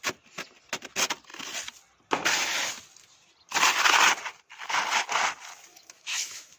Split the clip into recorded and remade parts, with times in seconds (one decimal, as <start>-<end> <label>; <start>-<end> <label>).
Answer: 0.0-5.7 recorded; 5.7-6.6 remade